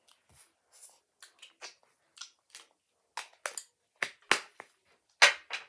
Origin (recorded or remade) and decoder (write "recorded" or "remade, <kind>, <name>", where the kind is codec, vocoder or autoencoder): recorded